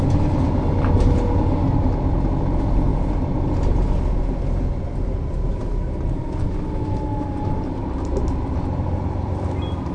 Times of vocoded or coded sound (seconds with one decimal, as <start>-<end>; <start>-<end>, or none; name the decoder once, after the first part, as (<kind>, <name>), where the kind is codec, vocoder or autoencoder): none